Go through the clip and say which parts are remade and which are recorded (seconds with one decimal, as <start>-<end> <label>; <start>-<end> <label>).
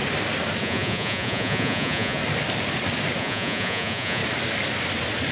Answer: 0.0-0.6 recorded; 0.6-2.2 remade; 2.2-3.2 recorded; 3.2-4.2 remade; 4.2-5.3 recorded